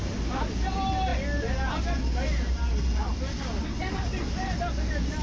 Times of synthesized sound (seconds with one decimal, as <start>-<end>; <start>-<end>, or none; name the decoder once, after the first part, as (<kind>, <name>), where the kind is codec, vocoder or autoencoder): none